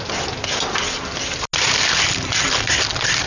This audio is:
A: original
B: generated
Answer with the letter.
A